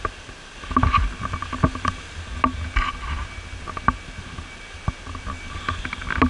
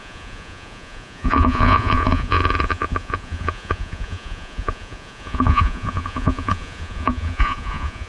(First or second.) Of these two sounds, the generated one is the second